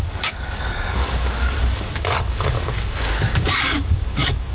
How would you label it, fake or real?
fake